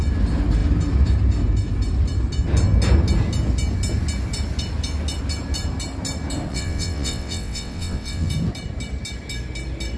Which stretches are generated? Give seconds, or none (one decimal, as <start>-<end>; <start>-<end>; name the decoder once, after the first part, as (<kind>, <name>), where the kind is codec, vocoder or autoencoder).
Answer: 6.5-8.3 (vocoder, WaveNeXt)